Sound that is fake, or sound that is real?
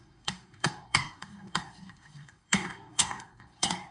fake